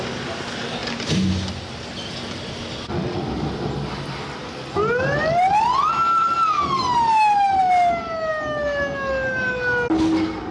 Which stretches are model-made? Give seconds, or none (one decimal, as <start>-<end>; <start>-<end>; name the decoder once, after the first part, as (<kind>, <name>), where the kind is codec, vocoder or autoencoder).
none